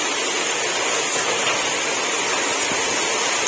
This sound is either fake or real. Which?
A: real